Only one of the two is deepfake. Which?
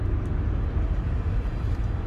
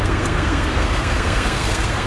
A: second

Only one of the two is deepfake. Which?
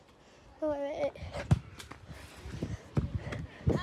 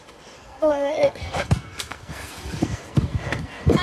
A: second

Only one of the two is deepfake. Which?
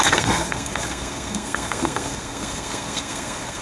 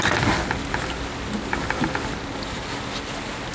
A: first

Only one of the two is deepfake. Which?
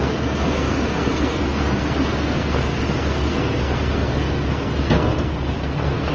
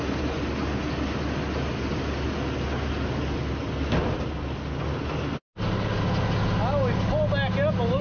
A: first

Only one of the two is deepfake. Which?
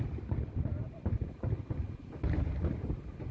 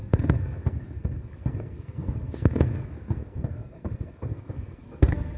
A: second